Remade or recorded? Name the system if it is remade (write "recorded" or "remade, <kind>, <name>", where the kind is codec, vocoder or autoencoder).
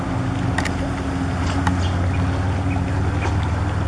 recorded